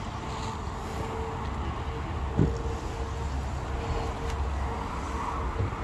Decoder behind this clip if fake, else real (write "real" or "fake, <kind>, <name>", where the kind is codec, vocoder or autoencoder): real